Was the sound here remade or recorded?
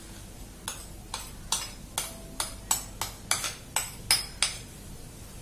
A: recorded